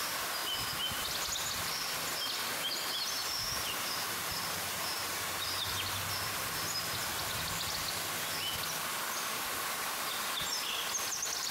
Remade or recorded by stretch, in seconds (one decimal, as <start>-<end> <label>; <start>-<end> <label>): 0.0-3.2 recorded; 3.2-5.7 remade; 5.7-11.5 recorded